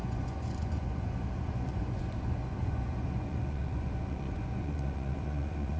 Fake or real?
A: fake